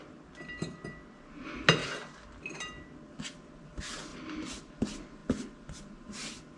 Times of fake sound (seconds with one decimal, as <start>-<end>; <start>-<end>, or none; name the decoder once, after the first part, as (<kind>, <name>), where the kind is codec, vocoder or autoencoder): 4.1-4.7 (vocoder, BigVGAN v2)